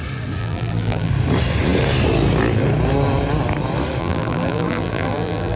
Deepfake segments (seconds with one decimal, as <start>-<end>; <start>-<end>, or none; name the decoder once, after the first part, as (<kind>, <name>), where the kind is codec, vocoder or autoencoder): 0.4-1.1 (vocoder, BigVGAN v2); 4.0-5.6